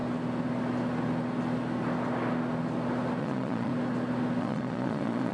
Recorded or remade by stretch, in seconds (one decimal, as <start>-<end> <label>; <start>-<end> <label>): 0.0-3.2 recorded; 3.2-3.7 remade; 3.7-4.4 recorded; 4.4-5.3 remade